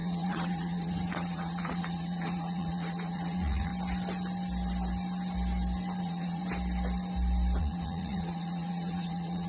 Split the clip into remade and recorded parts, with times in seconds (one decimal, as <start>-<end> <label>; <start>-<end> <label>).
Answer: 0.0-3.7 remade; 3.7-6.0 recorded; 6.0-6.4 remade; 6.4-7.6 recorded; 7.6-9.5 remade